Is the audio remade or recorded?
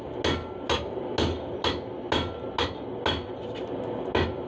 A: recorded